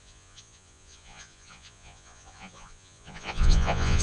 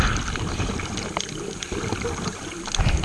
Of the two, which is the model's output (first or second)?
first